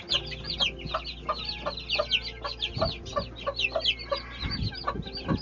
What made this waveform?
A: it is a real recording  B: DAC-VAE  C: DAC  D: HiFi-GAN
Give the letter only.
A